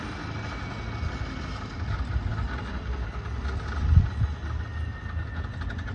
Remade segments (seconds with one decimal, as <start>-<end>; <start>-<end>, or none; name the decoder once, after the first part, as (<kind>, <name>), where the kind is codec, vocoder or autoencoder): none